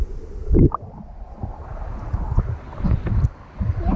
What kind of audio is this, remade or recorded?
recorded